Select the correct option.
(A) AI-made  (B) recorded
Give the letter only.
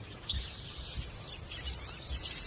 B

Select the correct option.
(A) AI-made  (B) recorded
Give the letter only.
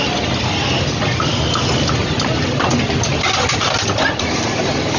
B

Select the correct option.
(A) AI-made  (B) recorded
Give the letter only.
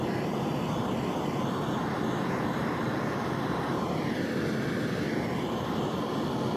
B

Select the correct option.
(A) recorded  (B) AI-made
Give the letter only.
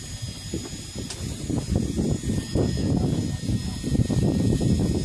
A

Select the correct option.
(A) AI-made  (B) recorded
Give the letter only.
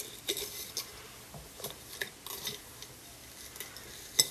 B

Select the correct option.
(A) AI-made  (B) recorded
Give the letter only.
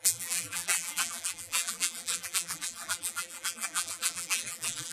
A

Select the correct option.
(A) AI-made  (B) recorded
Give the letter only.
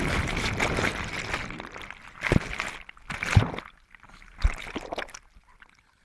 B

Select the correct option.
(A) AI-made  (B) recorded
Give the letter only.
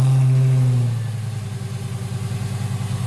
B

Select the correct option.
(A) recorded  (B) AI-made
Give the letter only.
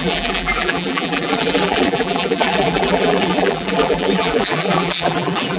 B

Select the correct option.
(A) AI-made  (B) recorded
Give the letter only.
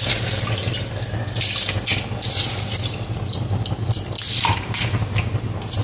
B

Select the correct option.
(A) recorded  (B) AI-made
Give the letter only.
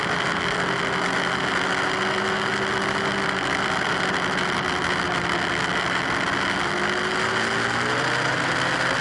A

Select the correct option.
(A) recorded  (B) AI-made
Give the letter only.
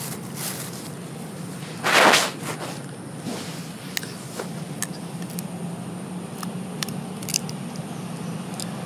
A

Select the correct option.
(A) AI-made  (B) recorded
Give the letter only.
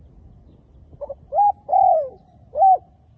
B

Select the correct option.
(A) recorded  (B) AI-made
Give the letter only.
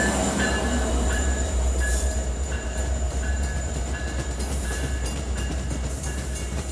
B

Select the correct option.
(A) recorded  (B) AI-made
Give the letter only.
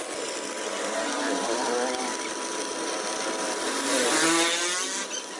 A